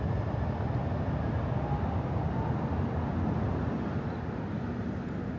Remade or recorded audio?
recorded